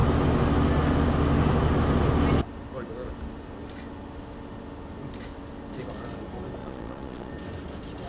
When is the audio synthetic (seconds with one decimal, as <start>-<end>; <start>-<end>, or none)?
6.6-7.3